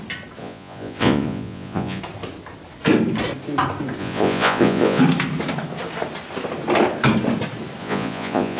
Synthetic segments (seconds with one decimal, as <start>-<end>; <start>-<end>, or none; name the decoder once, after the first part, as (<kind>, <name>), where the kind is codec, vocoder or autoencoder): 0.4-2.0 (vocoder, Vocos); 4.0-5.0; 7.8-8.6